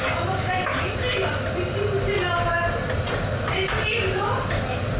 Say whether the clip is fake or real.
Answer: real